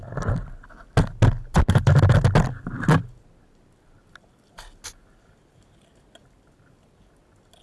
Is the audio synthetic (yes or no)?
no